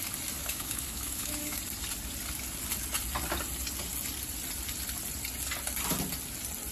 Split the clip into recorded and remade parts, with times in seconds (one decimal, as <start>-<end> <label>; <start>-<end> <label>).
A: 0.0-0.4 recorded; 0.4-1.6 remade; 1.6-6.7 recorded